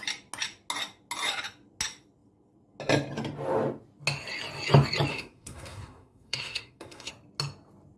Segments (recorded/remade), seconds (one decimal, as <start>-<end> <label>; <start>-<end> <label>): 0.0-5.1 recorded; 5.1-7.1 remade; 7.1-8.0 recorded